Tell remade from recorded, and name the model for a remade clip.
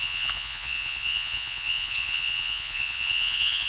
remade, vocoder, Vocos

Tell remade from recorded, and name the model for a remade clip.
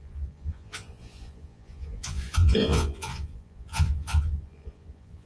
remade, vocoder, Vocos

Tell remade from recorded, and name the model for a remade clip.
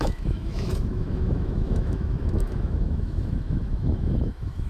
remade, autoencoder, DAC-VAE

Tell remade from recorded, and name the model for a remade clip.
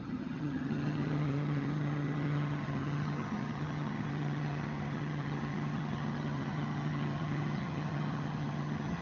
remade, vocoder, HiFi-GAN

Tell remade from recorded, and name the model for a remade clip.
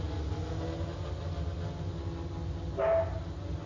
recorded